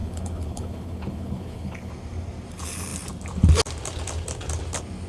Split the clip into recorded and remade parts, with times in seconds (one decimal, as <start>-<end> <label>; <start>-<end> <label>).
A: 0.0-1.9 remade; 1.9-5.1 recorded